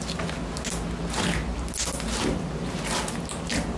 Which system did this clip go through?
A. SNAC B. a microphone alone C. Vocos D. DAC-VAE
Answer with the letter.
B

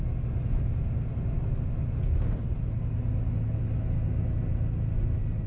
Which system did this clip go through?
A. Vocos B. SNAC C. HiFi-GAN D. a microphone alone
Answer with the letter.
D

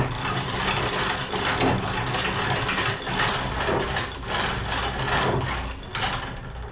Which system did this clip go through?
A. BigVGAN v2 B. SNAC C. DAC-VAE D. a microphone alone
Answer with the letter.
D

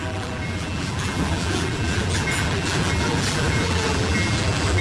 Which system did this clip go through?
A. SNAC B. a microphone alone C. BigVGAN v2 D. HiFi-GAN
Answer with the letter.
C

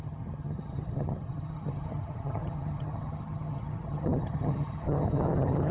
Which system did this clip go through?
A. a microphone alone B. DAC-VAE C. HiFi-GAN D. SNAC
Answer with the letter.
C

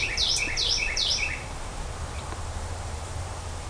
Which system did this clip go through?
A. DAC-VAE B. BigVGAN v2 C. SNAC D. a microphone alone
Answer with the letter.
B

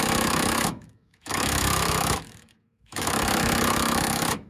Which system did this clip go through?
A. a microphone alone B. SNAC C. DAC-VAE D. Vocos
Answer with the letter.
C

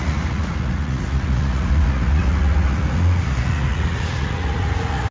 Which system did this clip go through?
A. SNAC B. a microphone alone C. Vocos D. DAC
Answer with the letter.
C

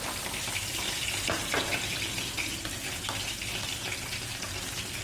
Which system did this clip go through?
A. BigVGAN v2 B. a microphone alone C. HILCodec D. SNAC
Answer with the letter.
B